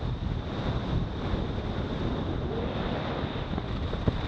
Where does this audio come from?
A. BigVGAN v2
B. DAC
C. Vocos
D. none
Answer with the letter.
D